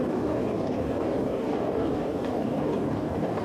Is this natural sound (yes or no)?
no